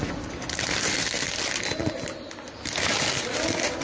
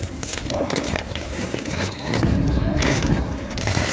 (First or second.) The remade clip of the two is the second